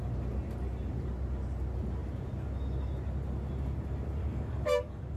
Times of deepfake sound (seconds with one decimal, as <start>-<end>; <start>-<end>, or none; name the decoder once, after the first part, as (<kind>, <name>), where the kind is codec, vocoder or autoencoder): 4.2-5.2 (codec, DAC)

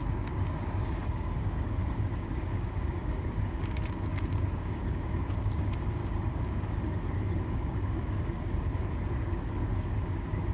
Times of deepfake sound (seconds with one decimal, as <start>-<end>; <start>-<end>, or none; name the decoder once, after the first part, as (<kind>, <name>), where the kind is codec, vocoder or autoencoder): 0.0-10.5 (codec, DAC)

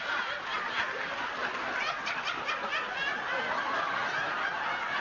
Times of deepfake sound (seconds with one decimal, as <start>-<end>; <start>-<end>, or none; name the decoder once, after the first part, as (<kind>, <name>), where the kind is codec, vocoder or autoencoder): none

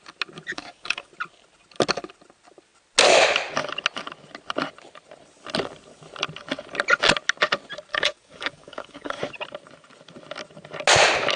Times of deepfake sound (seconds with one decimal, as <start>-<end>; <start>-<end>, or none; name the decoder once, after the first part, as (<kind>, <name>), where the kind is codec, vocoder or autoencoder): 0.5-1.1 (codec, DAC); 7.9-9.2

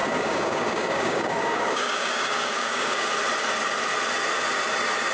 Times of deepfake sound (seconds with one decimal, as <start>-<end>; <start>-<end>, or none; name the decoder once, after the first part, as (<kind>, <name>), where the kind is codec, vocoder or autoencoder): 0.0-3.1 (codec, DAC)